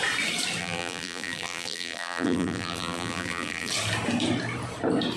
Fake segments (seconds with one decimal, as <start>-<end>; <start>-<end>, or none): 0.6-3.7